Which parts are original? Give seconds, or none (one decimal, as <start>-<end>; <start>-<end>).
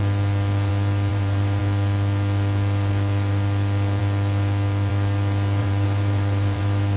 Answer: 0.0-1.1; 1.6-5.6